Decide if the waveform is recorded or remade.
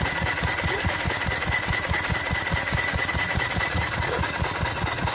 remade